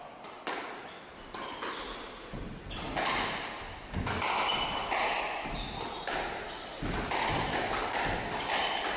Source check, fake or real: real